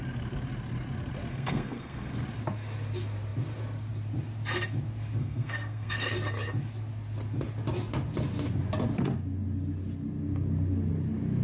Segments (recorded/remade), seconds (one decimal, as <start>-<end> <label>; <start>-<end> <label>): 0.0-1.3 recorded; 1.3-2.1 remade; 2.1-5.2 recorded; 5.2-6.1 remade; 6.1-11.4 recorded